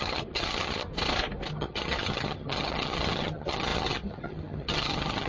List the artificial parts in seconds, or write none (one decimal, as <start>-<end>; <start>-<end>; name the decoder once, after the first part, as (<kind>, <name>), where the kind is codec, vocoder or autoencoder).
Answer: 0.0-0.9 (vocoder, HiFi-GAN); 1.5-5.3